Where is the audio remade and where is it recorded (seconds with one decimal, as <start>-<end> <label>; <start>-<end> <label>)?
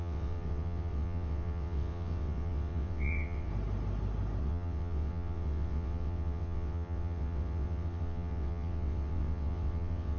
0.0-3.5 remade; 3.5-4.4 recorded; 4.4-10.2 remade